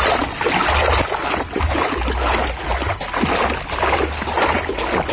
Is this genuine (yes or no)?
yes